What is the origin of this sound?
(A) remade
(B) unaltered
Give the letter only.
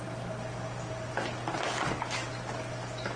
B